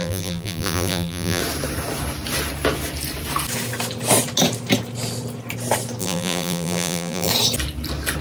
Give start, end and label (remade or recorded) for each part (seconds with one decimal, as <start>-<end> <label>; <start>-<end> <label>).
0.0-1.4 remade; 1.4-6.0 recorded; 6.0-7.3 remade; 7.3-8.2 recorded